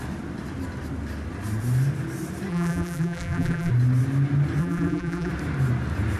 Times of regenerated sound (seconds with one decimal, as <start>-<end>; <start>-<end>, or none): 2.5-3.7; 4.6-5.3